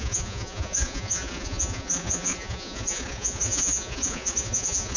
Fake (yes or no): yes